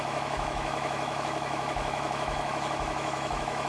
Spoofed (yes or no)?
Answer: yes